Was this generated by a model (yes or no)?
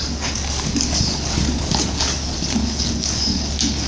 yes